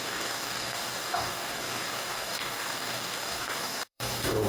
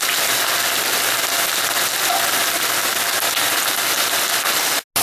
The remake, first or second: first